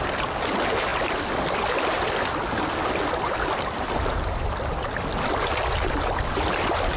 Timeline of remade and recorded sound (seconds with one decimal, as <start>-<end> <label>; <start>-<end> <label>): 0.0-7.0 recorded